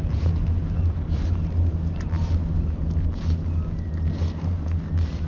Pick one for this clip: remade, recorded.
recorded